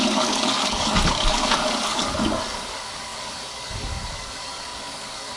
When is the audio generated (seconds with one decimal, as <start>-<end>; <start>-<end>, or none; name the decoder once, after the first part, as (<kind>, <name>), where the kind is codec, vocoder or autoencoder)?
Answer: 0.0-5.4 (codec, DAC)